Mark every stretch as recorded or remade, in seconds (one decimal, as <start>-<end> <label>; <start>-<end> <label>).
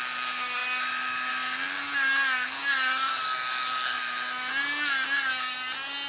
0.0-6.1 recorded